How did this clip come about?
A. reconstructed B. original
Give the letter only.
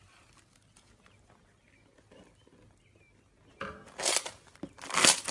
B